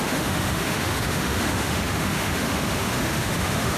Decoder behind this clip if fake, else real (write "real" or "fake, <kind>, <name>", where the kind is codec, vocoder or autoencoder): fake, autoencoder, DAC-VAE